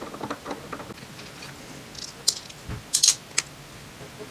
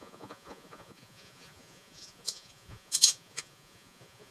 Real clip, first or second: first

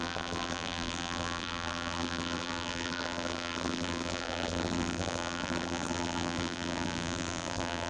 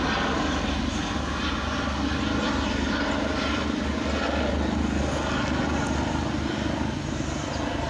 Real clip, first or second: second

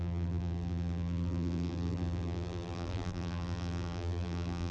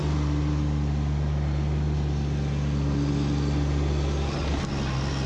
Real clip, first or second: second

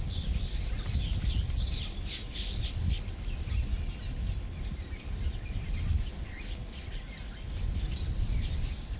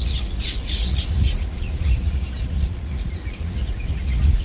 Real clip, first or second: first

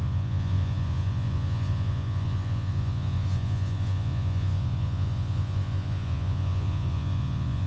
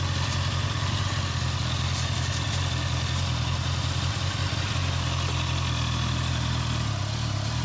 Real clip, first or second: second